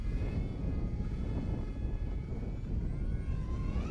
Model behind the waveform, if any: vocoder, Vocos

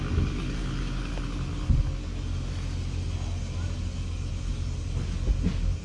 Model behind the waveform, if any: none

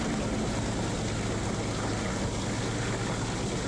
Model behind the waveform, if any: none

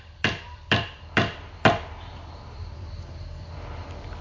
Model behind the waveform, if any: vocoder, BigVGAN v2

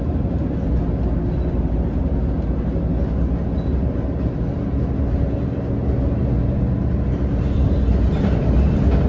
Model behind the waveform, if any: none